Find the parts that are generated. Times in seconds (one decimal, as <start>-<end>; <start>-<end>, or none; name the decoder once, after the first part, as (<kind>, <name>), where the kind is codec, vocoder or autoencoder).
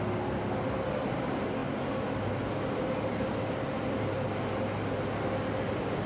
none